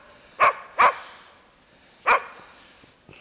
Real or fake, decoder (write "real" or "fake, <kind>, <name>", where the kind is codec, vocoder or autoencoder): real